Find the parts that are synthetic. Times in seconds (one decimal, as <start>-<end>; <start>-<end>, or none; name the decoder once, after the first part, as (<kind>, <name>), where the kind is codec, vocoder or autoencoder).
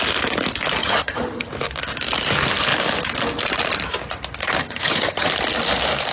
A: 0.8-1.5 (vocoder, HiFi-GAN); 4.6-5.3